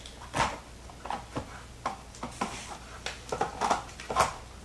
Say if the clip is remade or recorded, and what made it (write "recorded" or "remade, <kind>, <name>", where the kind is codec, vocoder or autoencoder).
recorded